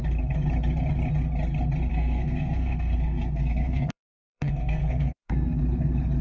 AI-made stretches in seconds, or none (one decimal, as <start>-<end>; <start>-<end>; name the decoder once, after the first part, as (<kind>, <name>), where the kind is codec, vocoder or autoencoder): 1.9-5.6 (codec, SNAC)

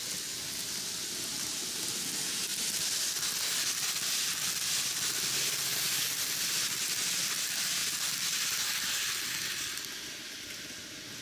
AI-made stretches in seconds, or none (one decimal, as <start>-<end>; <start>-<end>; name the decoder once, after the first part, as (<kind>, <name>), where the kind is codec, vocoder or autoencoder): none

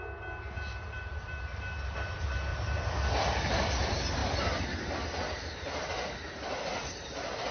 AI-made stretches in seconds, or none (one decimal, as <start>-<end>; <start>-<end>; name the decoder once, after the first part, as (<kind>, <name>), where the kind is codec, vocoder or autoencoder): 0.7-1.7 (vocoder, BigVGAN v2); 2.5-3.2

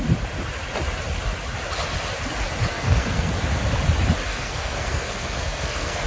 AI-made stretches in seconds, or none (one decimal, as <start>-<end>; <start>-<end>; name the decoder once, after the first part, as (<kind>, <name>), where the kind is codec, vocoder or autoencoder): 2.7-3.3 (codec, SNAC); 4.3-6.1

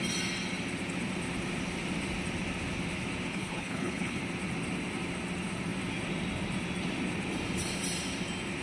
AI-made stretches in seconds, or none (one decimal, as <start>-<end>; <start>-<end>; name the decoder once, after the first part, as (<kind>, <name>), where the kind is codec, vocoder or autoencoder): 3.3-4.2 (codec, HILCodec)

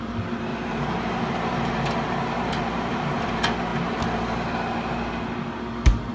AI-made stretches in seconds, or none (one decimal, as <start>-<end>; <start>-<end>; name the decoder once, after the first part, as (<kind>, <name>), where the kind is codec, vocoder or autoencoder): 0.5-3.3 (vocoder, BigVGAN v2)

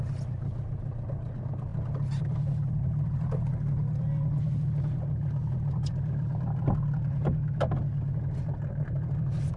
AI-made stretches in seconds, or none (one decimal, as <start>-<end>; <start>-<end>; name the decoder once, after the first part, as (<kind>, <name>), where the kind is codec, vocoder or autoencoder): none

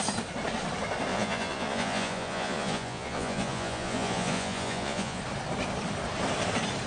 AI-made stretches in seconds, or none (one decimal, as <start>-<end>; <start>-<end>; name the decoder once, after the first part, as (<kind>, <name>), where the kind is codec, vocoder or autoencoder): 1.1-5.2 (vocoder, Vocos)